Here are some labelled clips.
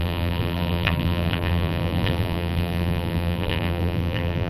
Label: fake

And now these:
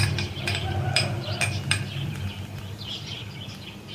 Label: fake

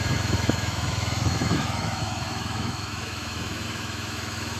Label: fake